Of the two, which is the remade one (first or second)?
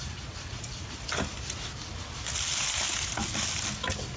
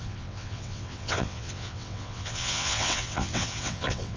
second